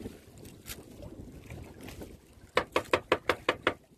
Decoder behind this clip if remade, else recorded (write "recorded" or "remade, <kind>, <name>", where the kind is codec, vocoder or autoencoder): recorded